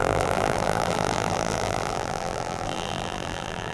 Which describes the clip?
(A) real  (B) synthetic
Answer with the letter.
B